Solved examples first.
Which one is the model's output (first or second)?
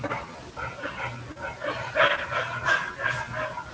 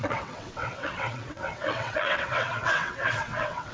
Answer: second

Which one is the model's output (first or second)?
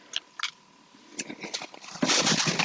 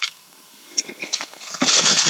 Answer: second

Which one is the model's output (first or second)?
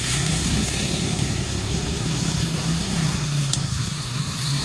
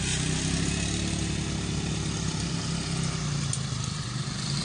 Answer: first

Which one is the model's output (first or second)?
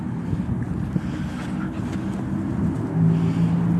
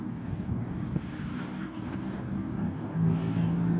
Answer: second